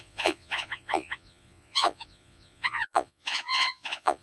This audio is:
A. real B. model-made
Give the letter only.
B